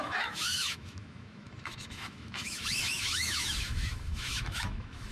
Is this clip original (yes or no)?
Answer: no